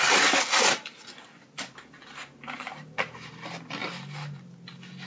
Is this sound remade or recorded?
recorded